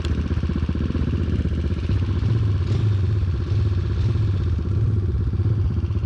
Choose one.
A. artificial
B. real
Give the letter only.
B